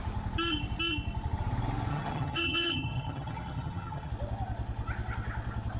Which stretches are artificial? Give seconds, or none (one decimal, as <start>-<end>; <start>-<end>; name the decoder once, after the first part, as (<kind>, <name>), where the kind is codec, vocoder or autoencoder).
1.9-4.1 (vocoder, HiFi-GAN)